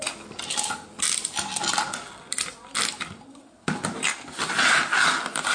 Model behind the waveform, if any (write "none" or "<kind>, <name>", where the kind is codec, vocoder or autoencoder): none